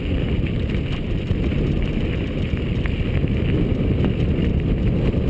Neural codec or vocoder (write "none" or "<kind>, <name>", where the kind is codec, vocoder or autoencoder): none